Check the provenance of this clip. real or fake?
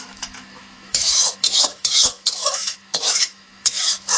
fake